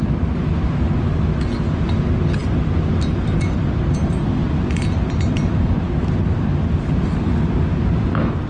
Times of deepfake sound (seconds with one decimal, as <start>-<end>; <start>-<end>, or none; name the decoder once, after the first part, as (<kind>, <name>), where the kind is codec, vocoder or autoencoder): none